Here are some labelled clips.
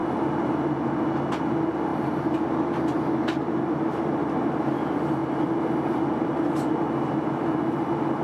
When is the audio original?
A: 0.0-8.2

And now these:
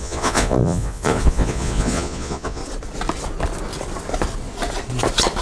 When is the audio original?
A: 2.6-5.4

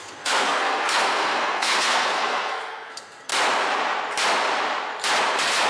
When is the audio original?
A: 3.3-5.7

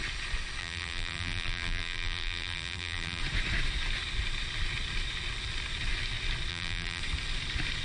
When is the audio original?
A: 0.0-0.6; 3.2-6.5; 7.0-7.8